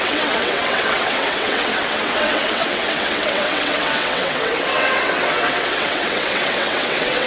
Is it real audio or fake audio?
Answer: fake